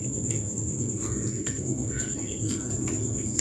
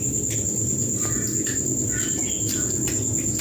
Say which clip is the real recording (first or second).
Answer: second